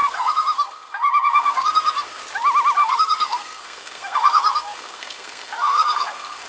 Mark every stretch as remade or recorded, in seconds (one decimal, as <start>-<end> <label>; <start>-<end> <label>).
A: 0.0-2.2 remade; 2.2-2.8 recorded; 2.8-6.5 remade